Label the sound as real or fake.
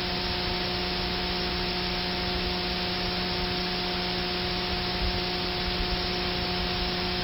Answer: real